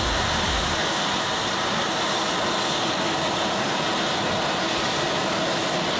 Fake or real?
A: real